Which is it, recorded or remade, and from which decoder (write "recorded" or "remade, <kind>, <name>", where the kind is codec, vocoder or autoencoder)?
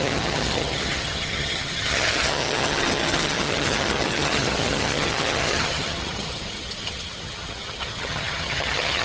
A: remade, vocoder, HiFi-GAN